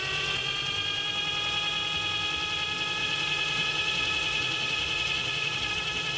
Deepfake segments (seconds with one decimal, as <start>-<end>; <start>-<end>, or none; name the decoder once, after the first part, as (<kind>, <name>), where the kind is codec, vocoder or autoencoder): 3.0-5.7 (vocoder, Vocos)